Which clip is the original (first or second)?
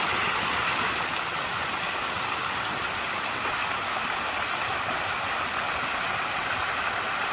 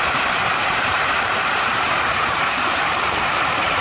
first